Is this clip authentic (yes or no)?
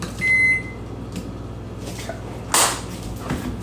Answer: yes